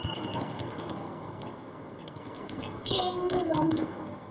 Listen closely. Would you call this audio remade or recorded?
remade